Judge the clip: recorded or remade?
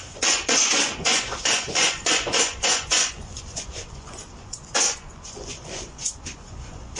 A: remade